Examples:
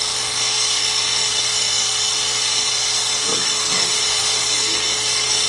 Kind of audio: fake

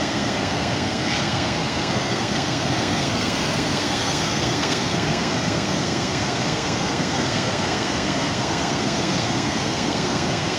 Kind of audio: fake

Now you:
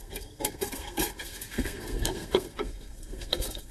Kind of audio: fake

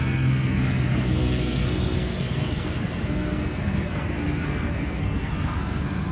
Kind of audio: fake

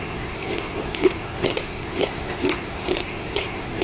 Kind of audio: fake